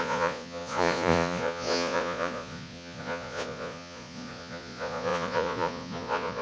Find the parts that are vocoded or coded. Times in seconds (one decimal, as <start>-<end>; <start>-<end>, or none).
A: 0.0-6.4